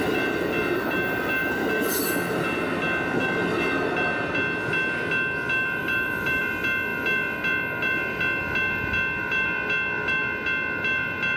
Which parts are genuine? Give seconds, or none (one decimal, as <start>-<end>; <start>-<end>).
0.0-1.4; 2.0-5.8; 6.4-11.4